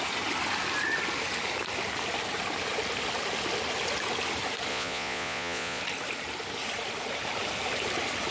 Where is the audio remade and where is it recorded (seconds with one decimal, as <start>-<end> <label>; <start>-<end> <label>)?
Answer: 0.0-4.7 recorded; 4.7-5.8 remade; 5.8-8.3 recorded